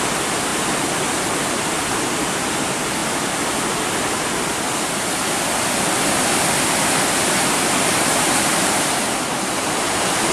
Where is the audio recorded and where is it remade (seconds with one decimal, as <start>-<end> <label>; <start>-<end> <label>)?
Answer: 0.0-10.3 recorded